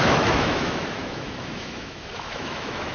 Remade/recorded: remade